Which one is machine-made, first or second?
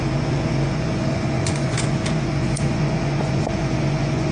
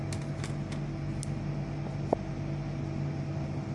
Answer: first